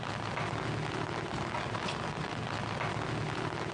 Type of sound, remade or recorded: recorded